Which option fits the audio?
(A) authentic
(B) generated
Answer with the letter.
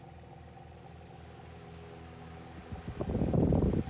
A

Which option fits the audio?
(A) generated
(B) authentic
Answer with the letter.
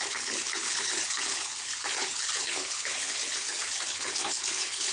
A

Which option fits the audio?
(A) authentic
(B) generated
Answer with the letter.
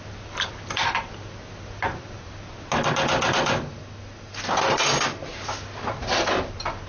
A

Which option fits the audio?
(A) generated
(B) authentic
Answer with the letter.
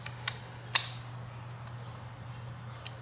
B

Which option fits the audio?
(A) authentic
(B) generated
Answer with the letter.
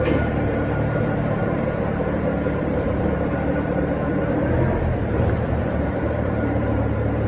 B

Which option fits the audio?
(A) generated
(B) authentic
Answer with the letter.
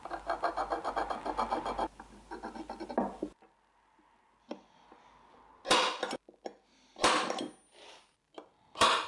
B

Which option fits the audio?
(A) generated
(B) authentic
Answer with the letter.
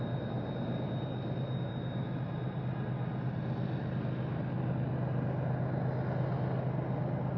B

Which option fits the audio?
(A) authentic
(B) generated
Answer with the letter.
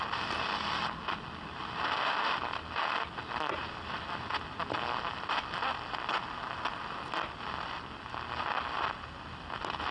A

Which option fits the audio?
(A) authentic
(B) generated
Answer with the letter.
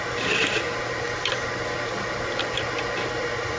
A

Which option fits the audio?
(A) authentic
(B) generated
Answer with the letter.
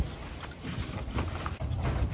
A